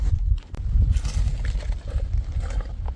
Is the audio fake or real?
real